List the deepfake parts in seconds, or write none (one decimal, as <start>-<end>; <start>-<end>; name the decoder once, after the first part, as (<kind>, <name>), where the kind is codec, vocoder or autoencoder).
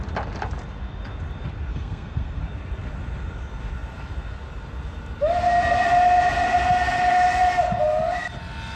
1.7-2.4 (codec, SNAC)